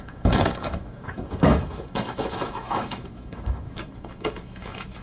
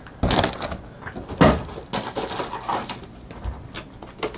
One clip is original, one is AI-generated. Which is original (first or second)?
second